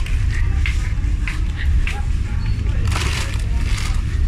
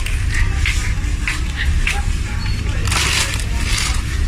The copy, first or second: first